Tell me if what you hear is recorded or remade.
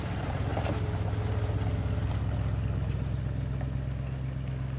recorded